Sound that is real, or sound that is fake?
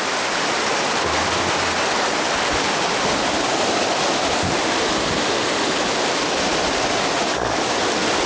real